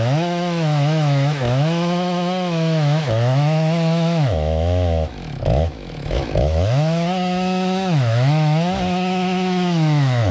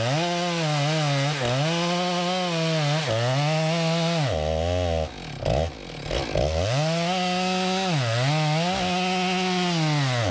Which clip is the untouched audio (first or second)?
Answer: second